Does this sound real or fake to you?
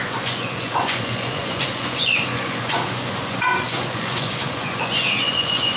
fake